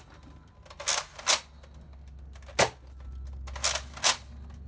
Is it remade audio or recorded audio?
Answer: recorded